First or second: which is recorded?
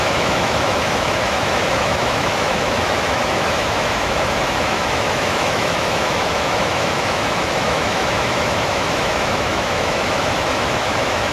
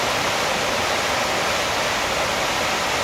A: second